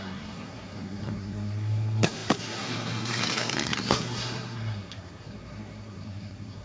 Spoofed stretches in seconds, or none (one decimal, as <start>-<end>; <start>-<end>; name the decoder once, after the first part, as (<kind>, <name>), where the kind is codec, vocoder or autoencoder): 0.0-6.6 (codec, SNAC)